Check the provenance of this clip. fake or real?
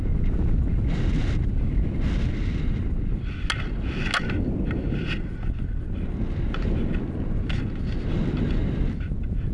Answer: real